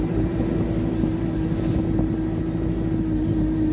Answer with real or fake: real